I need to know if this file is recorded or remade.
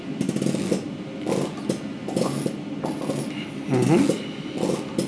recorded